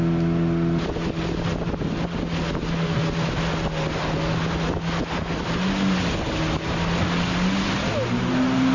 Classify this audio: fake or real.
real